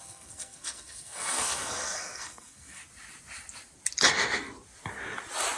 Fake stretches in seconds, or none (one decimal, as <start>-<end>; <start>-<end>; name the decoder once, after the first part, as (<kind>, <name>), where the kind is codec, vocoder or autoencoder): 0.0-2.8 (codec, SNAC)